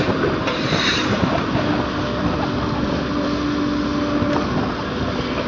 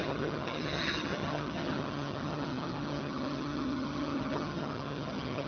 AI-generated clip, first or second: second